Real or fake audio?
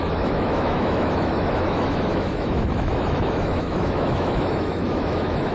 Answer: fake